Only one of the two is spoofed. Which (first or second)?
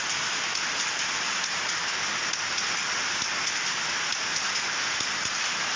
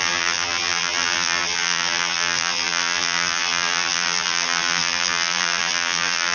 second